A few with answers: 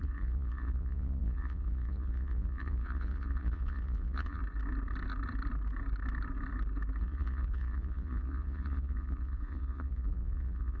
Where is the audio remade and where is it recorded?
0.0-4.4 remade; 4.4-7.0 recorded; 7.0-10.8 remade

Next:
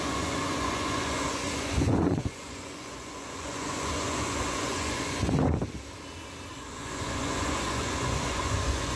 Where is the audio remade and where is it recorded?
0.0-5.6 remade; 5.6-6.5 recorded; 6.5-9.0 remade

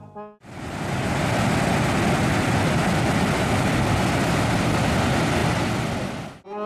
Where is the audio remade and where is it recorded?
0.0-6.7 recorded

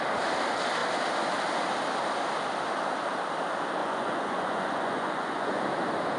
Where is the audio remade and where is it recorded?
0.0-3.8 recorded; 3.8-5.6 remade; 5.6-6.2 recorded

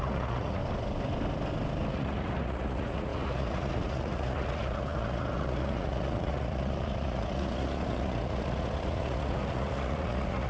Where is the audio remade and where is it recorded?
0.0-0.6 remade; 0.6-1.9 recorded; 1.9-10.5 remade

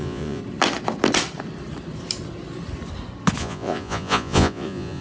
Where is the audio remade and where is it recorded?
0.0-0.4 remade; 0.4-3.4 recorded; 3.4-5.0 remade